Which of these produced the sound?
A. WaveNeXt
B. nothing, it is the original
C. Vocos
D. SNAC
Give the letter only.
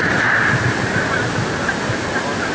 B